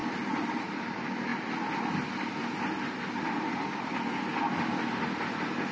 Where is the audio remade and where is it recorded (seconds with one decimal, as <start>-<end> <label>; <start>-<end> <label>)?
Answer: 0.0-0.8 remade; 0.8-5.7 recorded